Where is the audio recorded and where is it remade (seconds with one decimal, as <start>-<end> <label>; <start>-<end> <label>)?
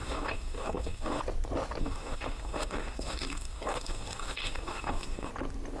0.0-1.2 remade; 1.2-1.8 recorded; 1.8-5.3 remade; 5.3-5.8 recorded